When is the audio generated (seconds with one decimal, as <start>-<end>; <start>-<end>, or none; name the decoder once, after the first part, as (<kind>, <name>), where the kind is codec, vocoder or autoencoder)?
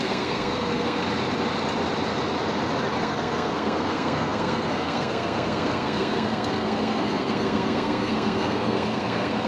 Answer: 0.0-1.0 (codec, SNAC); 3.0-9.5